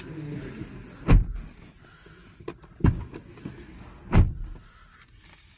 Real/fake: real